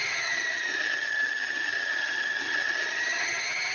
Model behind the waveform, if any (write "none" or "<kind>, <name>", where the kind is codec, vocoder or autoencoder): vocoder, HiFi-GAN